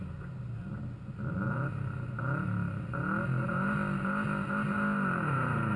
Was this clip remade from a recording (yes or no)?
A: no